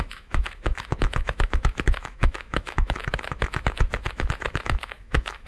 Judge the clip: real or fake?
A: fake